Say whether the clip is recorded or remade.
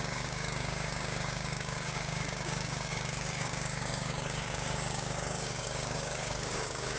remade